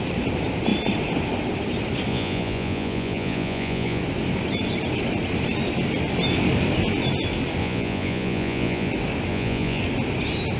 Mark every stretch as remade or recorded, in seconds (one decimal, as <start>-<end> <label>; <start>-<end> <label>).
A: 0.0-2.1 recorded; 2.1-4.0 remade; 4.0-7.6 recorded; 7.6-8.9 remade; 8.9-9.3 recorded; 9.3-9.8 remade; 9.8-10.6 recorded